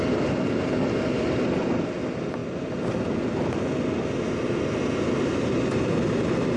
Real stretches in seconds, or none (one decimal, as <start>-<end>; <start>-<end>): 0.0-6.6